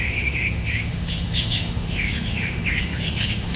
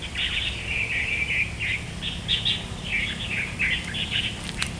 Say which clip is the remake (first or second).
first